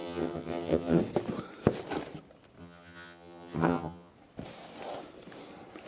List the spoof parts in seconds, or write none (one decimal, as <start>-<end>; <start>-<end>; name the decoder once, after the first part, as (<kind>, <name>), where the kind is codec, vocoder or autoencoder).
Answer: 0.0-1.0 (vocoder, HiFi-GAN); 2.6-4.1